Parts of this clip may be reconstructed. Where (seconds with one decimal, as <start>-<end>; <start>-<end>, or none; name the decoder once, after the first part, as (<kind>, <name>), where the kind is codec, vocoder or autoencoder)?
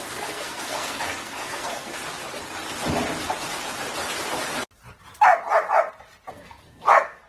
0.0-2.0 (codec, SNAC); 6.3-7.3